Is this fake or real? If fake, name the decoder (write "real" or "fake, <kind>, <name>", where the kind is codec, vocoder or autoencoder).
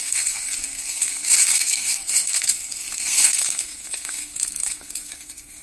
fake, codec, SNAC